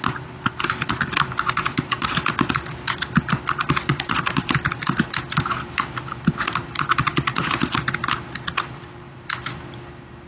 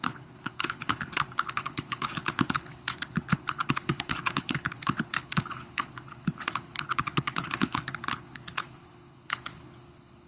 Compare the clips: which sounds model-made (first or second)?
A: second